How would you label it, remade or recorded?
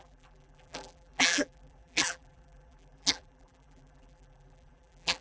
remade